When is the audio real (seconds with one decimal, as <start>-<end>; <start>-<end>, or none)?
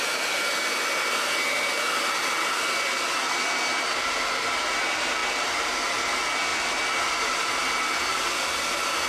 0.0-6.5; 7.5-9.1